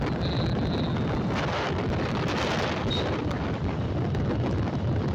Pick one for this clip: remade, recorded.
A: recorded